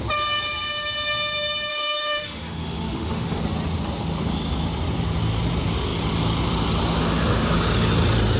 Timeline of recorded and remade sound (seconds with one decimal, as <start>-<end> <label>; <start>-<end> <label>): 0.0-1.7 recorded; 1.7-3.4 remade; 3.4-8.4 recorded